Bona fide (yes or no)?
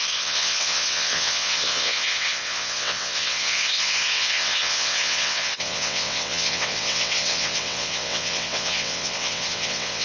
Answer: no